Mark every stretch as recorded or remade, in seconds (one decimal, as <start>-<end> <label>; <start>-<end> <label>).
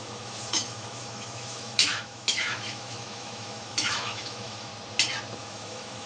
0.0-4.7 remade; 4.7-5.4 recorded; 5.4-6.1 remade